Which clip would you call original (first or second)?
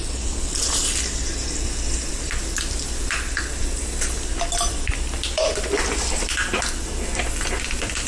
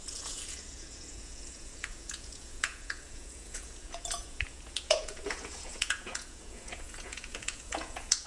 first